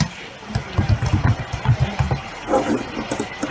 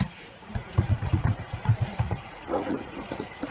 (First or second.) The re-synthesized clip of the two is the second